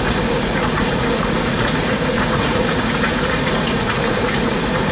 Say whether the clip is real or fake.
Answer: fake